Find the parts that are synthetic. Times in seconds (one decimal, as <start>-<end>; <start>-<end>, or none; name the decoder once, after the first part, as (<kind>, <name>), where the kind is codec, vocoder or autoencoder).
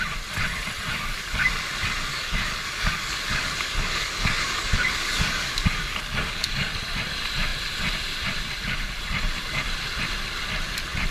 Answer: 0.9-1.5 (codec, DAC); 2.1-6.7